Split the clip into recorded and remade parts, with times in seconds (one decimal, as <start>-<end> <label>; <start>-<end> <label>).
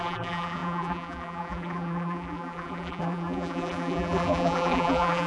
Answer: 0.0-5.3 remade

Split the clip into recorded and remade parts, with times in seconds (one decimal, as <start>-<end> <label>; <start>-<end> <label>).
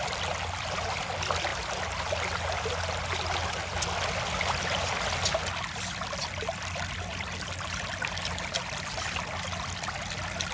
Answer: 0.0-10.5 recorded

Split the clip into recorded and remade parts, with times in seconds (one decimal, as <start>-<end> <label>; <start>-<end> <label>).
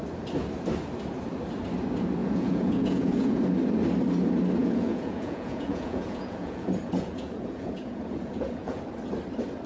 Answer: 0.0-2.2 recorded; 2.2-3.4 remade; 3.4-4.6 recorded; 4.6-8.9 remade; 8.9-9.7 recorded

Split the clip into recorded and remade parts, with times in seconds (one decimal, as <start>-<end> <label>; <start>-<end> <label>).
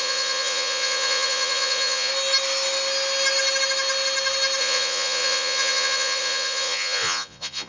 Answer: 0.0-2.1 remade; 2.1-4.6 recorded; 4.6-7.7 remade